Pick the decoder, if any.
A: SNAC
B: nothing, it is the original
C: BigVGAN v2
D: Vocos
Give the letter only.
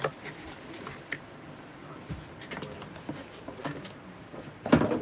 C